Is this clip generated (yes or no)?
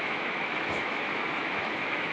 yes